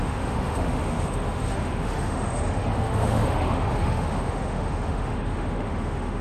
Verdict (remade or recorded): remade